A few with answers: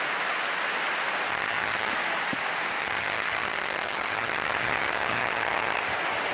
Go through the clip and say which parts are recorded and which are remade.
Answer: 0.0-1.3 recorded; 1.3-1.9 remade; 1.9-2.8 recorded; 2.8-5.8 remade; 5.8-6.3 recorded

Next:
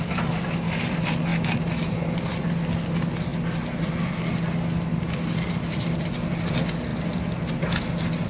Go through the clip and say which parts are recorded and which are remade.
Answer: 0.0-8.3 recorded

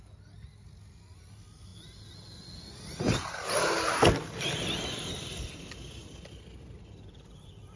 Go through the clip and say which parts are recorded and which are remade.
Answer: 0.0-7.8 recorded

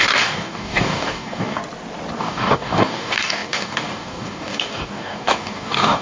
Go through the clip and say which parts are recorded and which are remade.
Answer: 0.0-1.6 remade; 1.6-2.2 recorded; 2.2-6.0 remade